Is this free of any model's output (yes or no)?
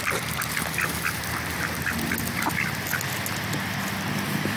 yes